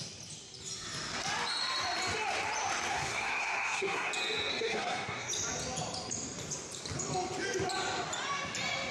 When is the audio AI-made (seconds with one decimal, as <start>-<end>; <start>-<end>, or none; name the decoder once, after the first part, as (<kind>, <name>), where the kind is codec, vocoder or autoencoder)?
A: 2.9-4.1 (codec, SNAC); 4.5-5.3

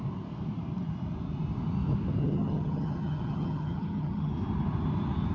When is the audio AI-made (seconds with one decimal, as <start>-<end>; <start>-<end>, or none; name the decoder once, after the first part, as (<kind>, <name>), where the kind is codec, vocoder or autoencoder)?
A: 2.2-4.3 (vocoder, HiFi-GAN)

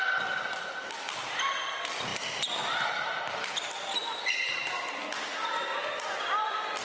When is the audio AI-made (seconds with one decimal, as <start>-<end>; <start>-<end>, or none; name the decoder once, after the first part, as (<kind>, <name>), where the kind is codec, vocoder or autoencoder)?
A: none

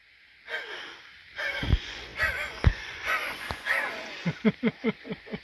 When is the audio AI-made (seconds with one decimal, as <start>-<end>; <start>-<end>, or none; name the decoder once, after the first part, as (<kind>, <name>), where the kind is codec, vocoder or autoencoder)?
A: 1.4-5.4 (vocoder, Vocos)

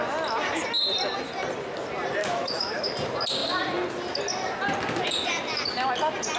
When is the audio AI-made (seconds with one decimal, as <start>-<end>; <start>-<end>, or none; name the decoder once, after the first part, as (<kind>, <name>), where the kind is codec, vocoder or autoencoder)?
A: 2.2-2.9 (autoencoder, DAC-VAE)

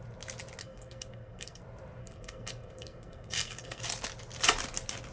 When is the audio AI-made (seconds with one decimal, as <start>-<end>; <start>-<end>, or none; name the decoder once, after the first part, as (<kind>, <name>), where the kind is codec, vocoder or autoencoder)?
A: 0.6-1.6 (codec, SNAC); 2.0-3.8

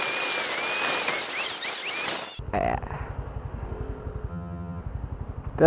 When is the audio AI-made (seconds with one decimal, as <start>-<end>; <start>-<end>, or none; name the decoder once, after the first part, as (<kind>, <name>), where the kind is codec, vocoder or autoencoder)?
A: 4.3-4.8 (vocoder, HiFi-GAN)